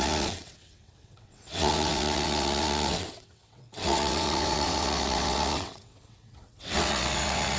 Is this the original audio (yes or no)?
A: no